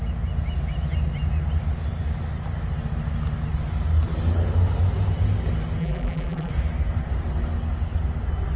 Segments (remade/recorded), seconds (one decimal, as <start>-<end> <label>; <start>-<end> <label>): 0.0-5.8 recorded; 5.8-6.5 remade; 6.5-8.6 recorded

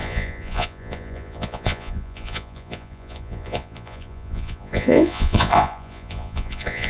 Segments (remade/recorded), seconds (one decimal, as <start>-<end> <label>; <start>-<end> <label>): 0.0-6.9 remade

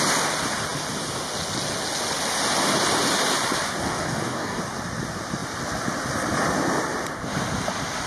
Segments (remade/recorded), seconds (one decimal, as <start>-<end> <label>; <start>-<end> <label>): 0.0-3.8 recorded; 3.8-4.6 remade; 4.6-8.1 recorded